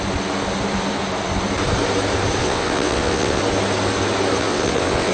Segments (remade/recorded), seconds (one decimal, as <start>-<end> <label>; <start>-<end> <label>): 0.0-2.4 recorded; 2.4-3.4 remade; 3.4-4.4 recorded; 4.4-5.1 remade